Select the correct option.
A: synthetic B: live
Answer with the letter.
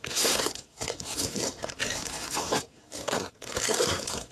A